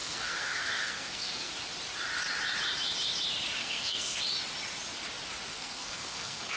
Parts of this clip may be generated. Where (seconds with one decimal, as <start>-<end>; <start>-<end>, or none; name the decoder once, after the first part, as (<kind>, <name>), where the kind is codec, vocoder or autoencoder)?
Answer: 0.0-1.5 (codec, SNAC); 3.6-4.2; 5.5-6.6